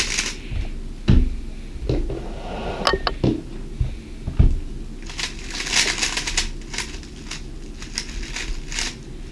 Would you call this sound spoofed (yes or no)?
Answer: no